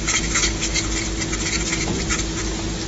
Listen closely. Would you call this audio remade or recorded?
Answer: recorded